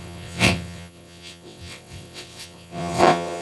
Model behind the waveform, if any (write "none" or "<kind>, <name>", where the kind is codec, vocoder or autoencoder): vocoder, WaveNeXt